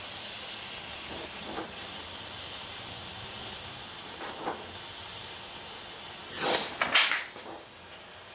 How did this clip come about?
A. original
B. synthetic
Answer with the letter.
A